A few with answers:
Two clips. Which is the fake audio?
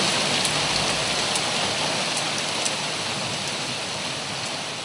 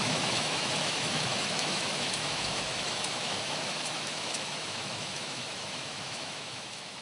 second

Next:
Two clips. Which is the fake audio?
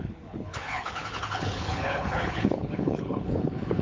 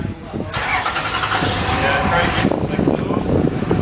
first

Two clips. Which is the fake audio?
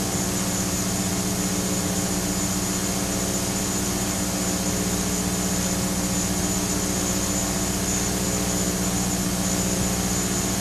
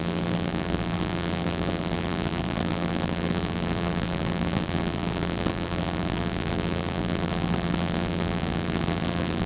second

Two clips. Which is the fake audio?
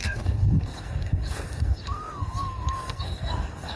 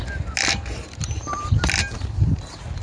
first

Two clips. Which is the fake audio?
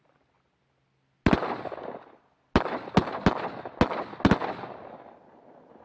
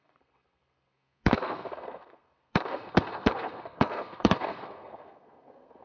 second